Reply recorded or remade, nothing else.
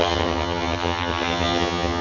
remade